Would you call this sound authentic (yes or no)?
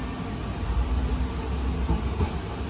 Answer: yes